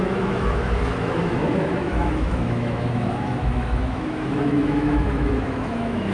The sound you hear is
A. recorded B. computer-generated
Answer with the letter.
B